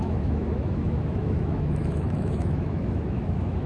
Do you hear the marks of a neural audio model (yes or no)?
yes